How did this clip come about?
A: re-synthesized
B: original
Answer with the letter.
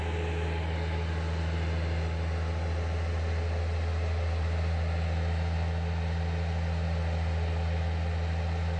B